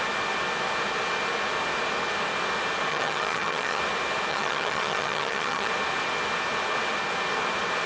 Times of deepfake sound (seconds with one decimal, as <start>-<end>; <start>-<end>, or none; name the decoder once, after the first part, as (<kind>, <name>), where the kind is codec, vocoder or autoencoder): 2.9-3.8 (vocoder, HiFi-GAN); 4.3-5.7